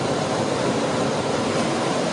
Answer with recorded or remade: remade